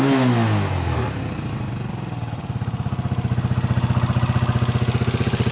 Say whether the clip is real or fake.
real